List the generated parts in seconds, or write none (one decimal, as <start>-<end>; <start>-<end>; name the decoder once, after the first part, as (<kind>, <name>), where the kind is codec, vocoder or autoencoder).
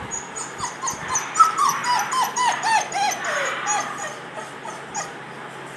1.8-4.1 (vocoder, BigVGAN v2)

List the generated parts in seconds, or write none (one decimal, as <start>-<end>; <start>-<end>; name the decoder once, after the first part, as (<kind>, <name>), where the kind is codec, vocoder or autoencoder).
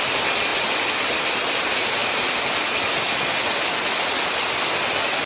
none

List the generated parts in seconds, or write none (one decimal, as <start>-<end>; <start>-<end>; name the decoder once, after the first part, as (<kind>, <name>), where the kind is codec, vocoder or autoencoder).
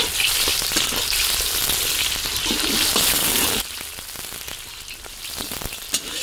none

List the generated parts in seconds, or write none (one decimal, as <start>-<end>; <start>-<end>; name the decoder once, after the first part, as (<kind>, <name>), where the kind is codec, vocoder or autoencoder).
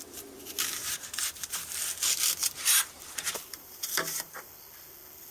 0.8-1.8 (vocoder, BigVGAN v2); 2.4-4.5